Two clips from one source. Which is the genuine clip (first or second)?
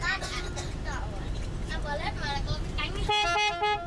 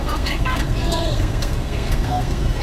first